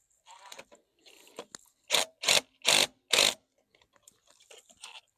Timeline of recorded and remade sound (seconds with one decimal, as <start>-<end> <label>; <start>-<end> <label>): 0.0-5.2 recorded